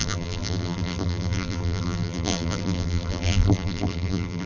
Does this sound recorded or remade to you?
remade